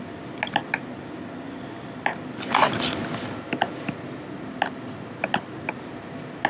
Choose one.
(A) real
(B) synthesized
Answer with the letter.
A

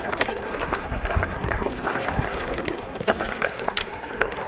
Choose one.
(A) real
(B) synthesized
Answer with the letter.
B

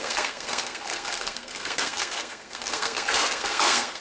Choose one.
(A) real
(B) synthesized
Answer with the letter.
B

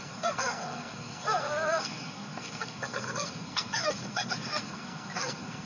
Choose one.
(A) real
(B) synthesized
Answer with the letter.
B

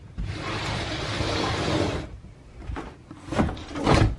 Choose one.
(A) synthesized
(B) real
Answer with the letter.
B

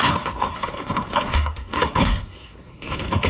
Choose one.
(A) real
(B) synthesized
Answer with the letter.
B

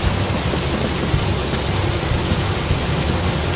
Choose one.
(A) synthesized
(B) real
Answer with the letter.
B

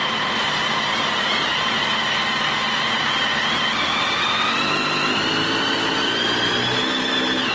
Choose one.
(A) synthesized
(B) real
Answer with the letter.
B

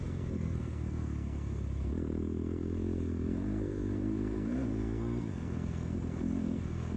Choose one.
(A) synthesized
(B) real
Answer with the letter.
A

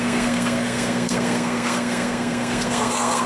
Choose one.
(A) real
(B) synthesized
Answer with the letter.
B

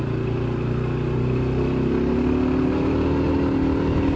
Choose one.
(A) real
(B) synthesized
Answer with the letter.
A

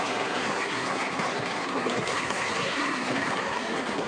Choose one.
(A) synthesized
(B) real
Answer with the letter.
A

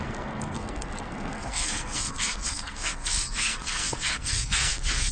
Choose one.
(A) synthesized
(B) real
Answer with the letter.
A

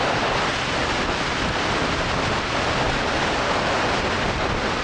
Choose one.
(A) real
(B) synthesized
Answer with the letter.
A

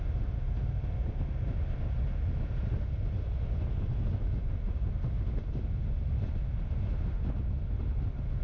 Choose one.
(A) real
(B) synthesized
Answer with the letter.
A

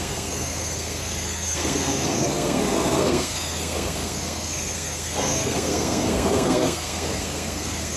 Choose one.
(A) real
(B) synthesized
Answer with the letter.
B